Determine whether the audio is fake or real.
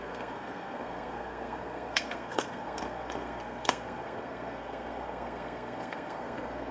fake